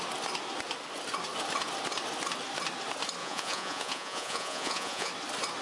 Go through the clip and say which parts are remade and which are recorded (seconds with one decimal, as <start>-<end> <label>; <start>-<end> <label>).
0.0-3.2 recorded; 3.2-5.1 remade; 5.1-5.6 recorded